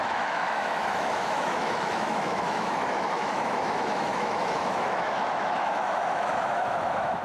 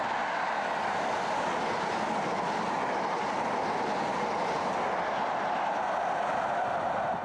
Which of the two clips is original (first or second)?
second